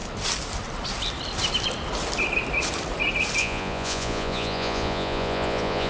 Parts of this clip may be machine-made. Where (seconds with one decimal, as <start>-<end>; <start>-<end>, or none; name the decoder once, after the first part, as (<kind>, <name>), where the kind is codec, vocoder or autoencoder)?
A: 3.4-5.9 (vocoder, Vocos)